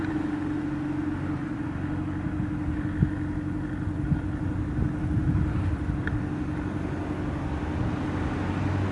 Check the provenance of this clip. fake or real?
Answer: real